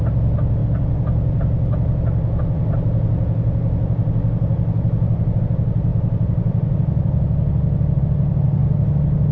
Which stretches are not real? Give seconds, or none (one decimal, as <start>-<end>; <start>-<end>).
none